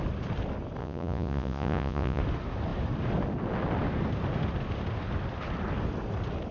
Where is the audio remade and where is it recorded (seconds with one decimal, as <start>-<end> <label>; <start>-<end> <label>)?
0.0-0.8 recorded; 0.8-2.2 remade; 2.2-6.5 recorded